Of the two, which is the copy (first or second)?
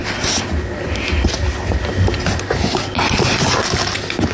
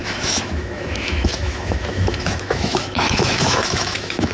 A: second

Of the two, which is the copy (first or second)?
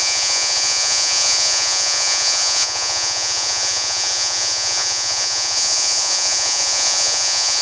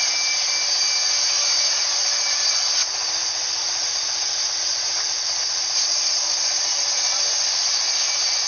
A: first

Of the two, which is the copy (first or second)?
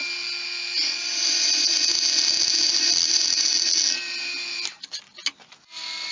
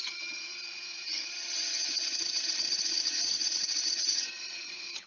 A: second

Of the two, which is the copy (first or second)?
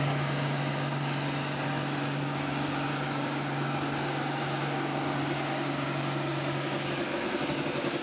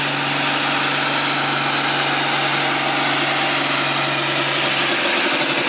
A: first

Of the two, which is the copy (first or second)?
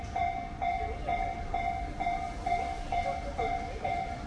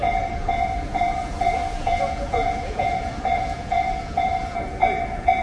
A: second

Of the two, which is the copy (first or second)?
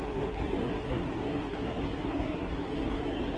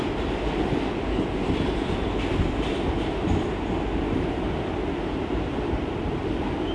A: first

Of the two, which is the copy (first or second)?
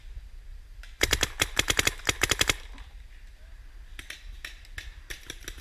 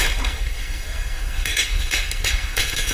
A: second